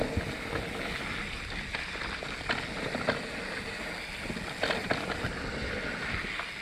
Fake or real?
real